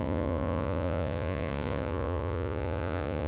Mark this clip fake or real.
fake